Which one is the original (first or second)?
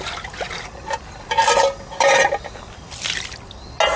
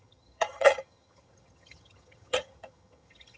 first